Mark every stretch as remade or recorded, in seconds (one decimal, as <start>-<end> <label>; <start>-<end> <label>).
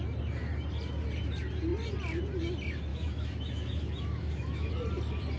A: 0.0-2.9 recorded; 2.9-4.7 remade; 4.7-5.4 recorded